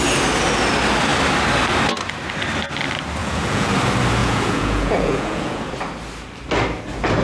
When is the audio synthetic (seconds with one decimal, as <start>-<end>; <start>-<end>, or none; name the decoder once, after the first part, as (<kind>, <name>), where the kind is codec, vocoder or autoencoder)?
3.2-3.7 (vocoder, Vocos); 4.2-5.7